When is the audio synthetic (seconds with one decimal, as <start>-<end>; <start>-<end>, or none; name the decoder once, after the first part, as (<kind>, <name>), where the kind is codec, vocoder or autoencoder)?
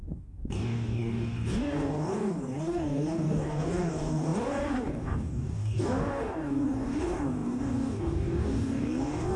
0.0-9.4 (codec, DAC)